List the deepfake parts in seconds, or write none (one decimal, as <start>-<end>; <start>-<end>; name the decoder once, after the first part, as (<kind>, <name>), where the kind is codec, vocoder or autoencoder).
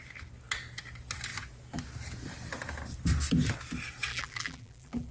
4.1-5.1 (vocoder, BigVGAN v2)